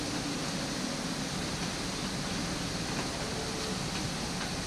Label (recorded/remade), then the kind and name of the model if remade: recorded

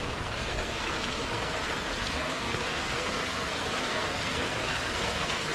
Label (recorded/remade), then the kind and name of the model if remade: remade, codec, SNAC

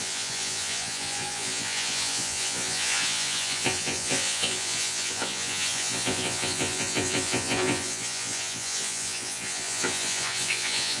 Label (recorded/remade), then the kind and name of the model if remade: remade, vocoder, Vocos